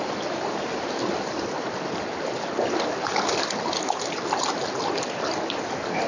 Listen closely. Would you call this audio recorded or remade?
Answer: recorded